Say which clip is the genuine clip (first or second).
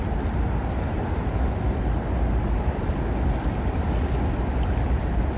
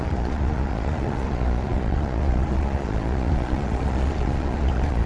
first